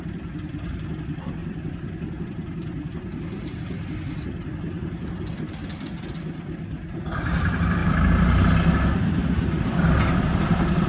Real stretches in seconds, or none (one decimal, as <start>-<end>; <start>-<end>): 0.0-1.4; 5.1-7.8; 10.0-10.9